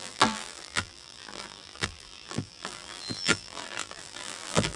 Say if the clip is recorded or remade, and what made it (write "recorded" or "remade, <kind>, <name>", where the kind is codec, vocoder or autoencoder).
remade, vocoder, BigVGAN v2